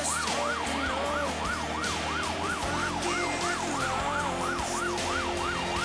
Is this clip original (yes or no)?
yes